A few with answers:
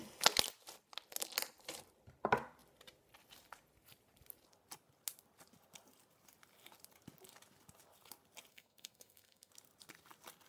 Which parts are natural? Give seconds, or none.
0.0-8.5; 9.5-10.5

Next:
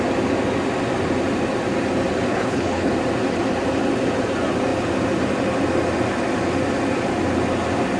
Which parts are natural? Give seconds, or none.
0.0-2.3; 2.9-8.0

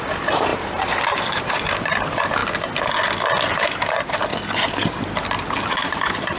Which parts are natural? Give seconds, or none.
2.4-3.6; 4.3-5.7

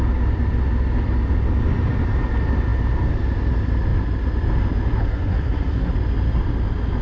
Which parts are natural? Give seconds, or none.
0.0-5.0; 5.9-7.0

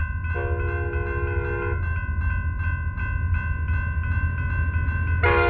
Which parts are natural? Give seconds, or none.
0.0-5.5

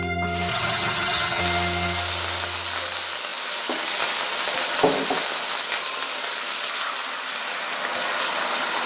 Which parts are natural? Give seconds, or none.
0.0-0.5; 1.4-8.9

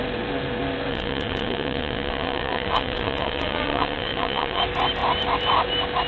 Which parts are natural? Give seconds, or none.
0.0-0.9; 4.6-6.1

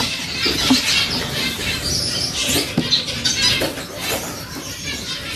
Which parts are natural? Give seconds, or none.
2.4-4.1